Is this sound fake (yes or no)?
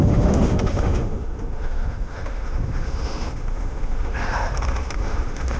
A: yes